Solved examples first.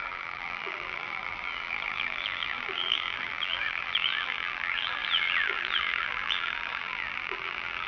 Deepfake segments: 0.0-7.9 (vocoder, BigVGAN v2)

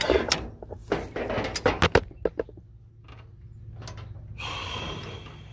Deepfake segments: none

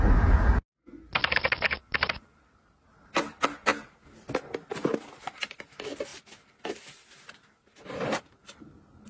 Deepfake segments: none